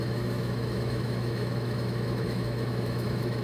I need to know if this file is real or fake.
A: fake